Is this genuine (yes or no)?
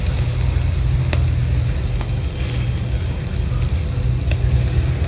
yes